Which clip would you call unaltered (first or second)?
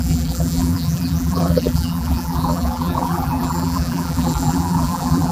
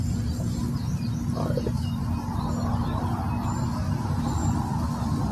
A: second